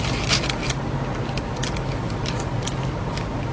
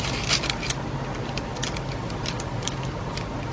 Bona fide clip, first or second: first